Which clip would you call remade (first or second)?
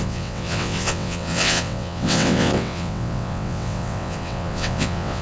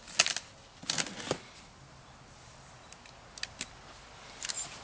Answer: first